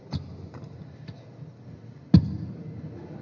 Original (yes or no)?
yes